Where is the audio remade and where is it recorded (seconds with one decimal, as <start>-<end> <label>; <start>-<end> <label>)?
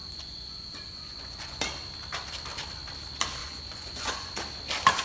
0.0-1.6 remade; 1.6-3.4 recorded; 3.4-4.3 remade; 4.3-5.0 recorded